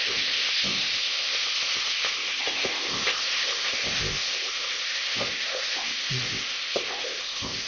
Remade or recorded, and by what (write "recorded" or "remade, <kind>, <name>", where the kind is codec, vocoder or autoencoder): remade, codec, ZipCodec